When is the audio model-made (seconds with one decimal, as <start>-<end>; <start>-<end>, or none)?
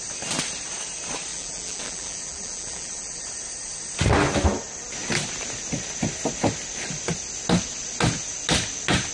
1.3-3.2